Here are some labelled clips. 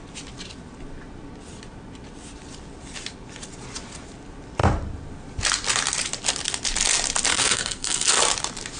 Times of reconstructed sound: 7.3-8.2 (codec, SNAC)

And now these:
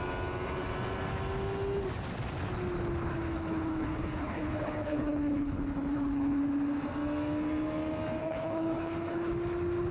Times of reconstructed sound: 3.1-6.4 (codec, HILCodec); 8.2-9.3

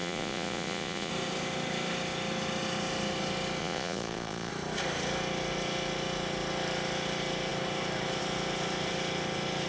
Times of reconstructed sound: 0.0-1.1 (vocoder, Vocos); 3.6-4.5